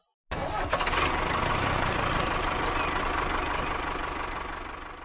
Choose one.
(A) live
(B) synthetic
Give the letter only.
A